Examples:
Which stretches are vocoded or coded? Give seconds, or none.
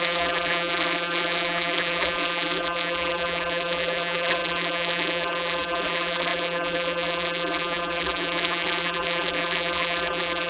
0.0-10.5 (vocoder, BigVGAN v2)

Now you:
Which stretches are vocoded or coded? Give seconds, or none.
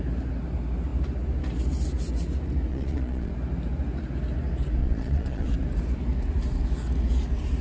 2.7-3.3 (vocoder, Vocos); 4.8-5.5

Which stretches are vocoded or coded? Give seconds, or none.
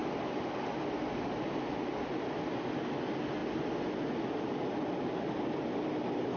none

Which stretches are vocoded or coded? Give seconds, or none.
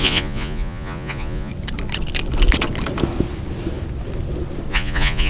0.0-1.5 (vocoder, Vocos); 4.7-5.3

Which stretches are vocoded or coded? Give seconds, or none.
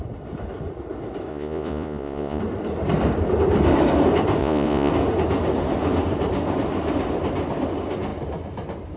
1.3-2.4 (vocoder, Vocos); 4.4-4.9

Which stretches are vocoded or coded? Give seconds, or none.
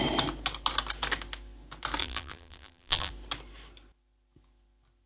2.0-3.1 (vocoder, BigVGAN v2)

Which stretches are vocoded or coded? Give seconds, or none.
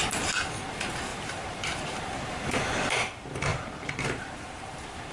1.1-2.8 (vocoder, BigVGAN v2); 3.5-5.1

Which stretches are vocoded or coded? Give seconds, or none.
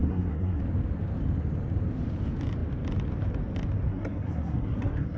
0.0-0.6 (codec, SNAC); 3.9-5.2